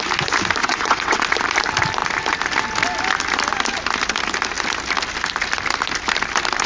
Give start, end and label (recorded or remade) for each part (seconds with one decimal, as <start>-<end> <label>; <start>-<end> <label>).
0.0-0.6 recorded; 0.6-1.2 remade; 1.2-6.7 recorded